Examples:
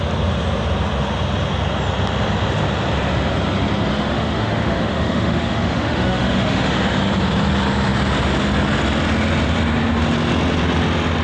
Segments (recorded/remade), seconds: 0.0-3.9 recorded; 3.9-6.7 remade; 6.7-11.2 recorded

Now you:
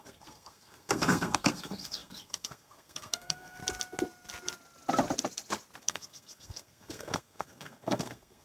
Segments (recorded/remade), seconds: 0.0-3.6 remade; 3.6-5.8 recorded; 5.8-8.4 remade

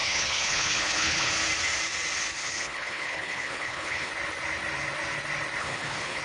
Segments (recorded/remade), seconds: 0.0-1.3 remade; 1.3-2.4 recorded; 2.4-4.1 remade; 4.1-5.6 recorded; 5.6-6.2 remade

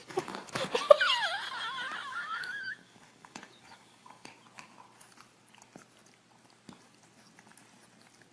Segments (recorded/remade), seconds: 0.0-0.5 remade; 0.5-2.1 recorded; 2.1-4.3 remade; 4.3-8.3 recorded